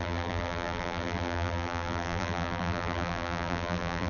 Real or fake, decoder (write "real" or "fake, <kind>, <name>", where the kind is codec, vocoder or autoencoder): fake, vocoder, BigVGAN v2